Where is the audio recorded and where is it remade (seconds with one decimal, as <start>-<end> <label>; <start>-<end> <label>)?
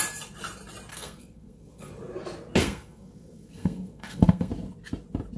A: 0.0-0.9 recorded; 0.9-1.9 remade; 1.9-2.6 recorded; 2.6-4.5 remade; 4.5-5.4 recorded